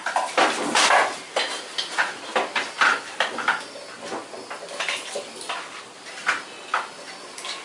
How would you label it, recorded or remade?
recorded